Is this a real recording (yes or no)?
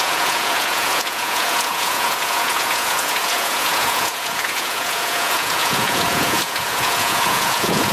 no